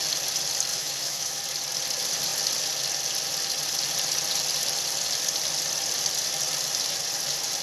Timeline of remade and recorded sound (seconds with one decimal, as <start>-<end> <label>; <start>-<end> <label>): 0.0-0.7 recorded; 0.7-1.4 remade; 1.4-7.6 recorded